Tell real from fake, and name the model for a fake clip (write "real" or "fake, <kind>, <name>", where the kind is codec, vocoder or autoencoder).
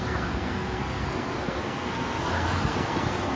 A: fake, codec, SNAC